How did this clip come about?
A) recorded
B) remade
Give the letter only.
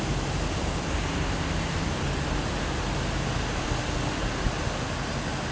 A